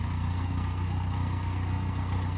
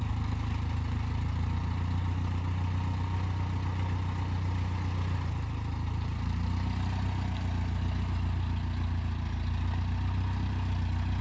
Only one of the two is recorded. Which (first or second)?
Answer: second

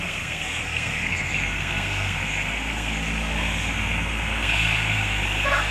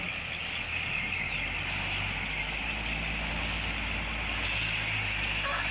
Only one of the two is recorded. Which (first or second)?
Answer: second